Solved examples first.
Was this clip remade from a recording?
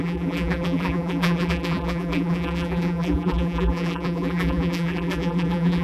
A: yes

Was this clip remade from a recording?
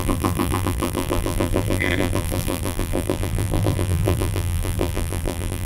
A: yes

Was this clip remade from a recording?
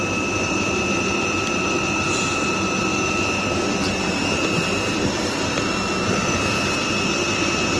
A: yes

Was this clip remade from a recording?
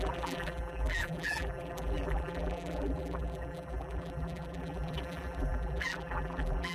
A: yes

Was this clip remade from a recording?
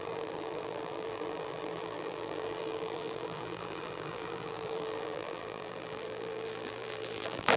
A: yes